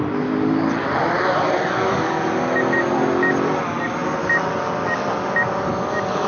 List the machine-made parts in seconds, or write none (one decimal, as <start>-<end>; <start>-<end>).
none